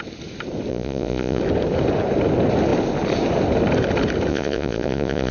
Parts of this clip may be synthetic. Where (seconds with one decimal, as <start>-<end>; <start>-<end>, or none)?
0.7-1.4; 4.3-5.3